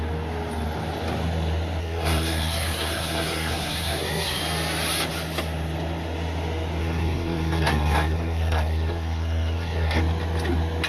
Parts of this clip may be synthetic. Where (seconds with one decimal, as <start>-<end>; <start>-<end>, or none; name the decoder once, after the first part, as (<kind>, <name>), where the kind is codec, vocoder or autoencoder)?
1.8-4.4 (codec, SNAC); 6.8-10.0